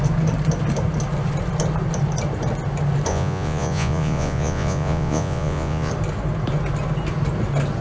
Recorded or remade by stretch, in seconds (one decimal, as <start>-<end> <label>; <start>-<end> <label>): 0.0-3.1 recorded; 3.1-5.9 remade; 5.9-7.8 recorded